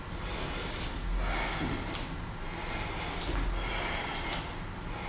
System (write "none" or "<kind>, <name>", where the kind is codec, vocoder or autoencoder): none